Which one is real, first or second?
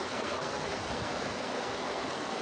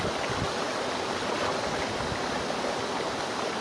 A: second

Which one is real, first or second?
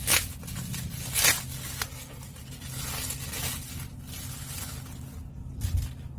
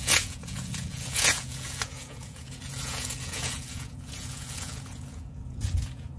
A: first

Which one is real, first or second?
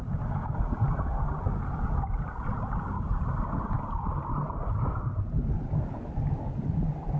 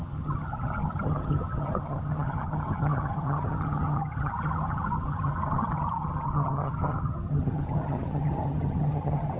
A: first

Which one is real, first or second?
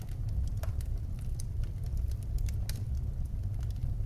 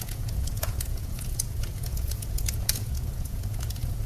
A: first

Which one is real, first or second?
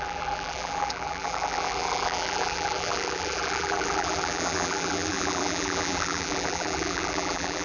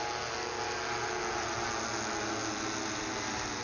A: second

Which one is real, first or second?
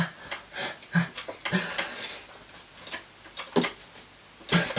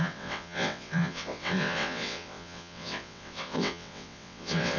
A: first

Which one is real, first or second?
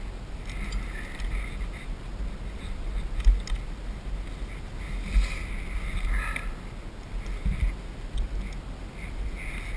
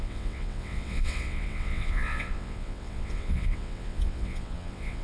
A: first